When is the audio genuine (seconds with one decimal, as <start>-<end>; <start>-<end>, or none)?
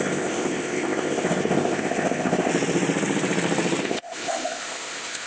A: 2.5-3.8